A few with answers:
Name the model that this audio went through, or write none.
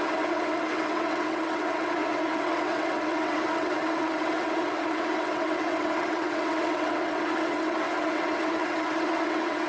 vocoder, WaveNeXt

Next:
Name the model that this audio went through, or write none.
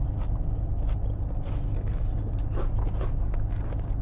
none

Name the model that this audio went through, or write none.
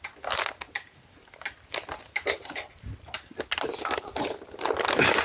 none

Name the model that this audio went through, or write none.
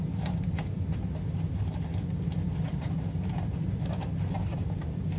none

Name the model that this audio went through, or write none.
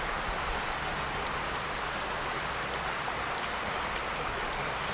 none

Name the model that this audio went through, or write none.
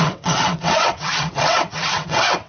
vocoder, WaveNeXt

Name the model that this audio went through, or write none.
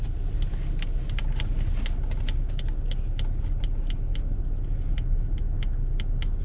none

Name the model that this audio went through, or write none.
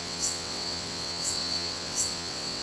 vocoder, WaveNeXt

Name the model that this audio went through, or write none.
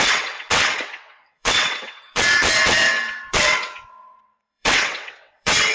vocoder, WaveNeXt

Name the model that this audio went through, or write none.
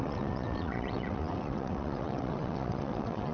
vocoder, WaveNeXt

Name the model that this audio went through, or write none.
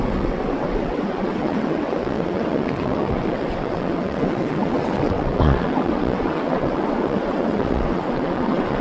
vocoder, WaveNeXt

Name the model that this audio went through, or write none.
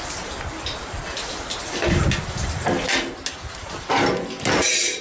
none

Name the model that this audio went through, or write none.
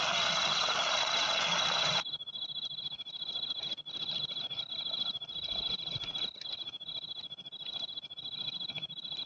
none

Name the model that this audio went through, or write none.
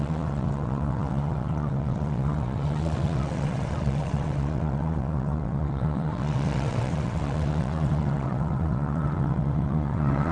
vocoder, WaveNeXt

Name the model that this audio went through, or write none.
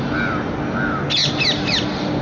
none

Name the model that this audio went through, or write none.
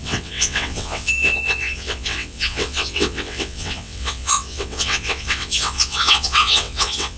vocoder, WaveNeXt